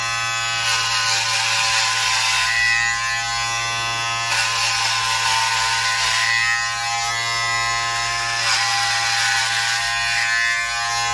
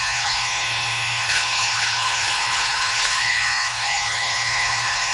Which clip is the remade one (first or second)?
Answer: second